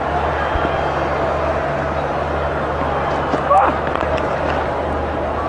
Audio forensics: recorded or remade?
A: recorded